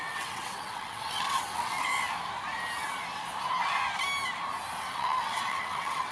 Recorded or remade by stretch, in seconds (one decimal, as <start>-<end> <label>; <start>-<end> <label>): 0.0-1.9 remade; 1.9-4.8 recorded; 4.8-6.1 remade